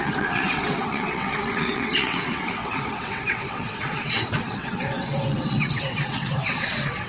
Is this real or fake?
fake